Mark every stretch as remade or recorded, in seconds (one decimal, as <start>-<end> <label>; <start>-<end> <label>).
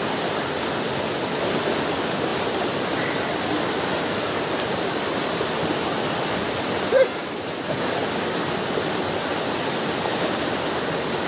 0.0-2.3 recorded; 2.3-6.2 remade; 6.2-11.3 recorded